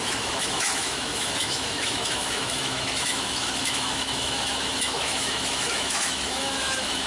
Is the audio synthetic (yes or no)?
yes